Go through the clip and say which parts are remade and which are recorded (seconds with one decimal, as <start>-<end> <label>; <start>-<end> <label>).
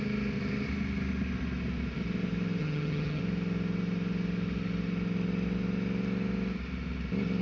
0.0-2.6 recorded; 2.6-3.2 remade; 3.2-7.4 recorded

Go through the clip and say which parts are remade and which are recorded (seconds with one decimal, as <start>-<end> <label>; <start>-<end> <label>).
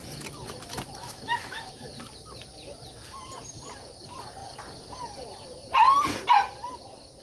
0.0-1.0 recorded; 1.0-1.7 remade; 1.7-7.2 recorded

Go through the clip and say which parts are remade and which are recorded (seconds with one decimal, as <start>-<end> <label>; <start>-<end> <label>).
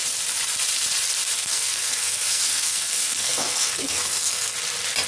0.0-1.4 recorded; 1.4-4.5 remade; 4.5-5.1 recorded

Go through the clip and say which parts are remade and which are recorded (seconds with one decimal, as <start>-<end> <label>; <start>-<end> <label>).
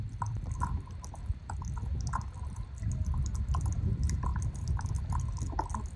0.0-4.3 recorded; 4.3-4.9 remade; 4.9-6.0 recorded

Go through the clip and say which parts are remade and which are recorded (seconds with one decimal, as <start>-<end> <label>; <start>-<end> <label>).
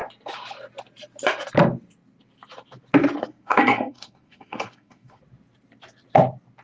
0.0-3.2 recorded; 3.2-5.2 remade; 5.2-6.6 recorded